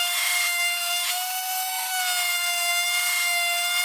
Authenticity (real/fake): fake